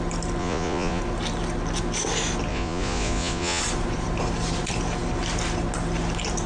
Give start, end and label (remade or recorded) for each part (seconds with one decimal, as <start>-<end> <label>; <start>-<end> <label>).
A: 0.0-0.4 recorded; 0.4-1.0 remade; 1.0-2.5 recorded; 2.5-3.6 remade; 3.6-6.5 recorded